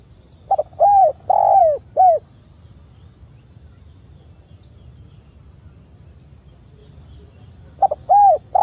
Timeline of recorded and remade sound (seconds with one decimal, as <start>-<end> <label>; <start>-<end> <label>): 0.0-8.6 recorded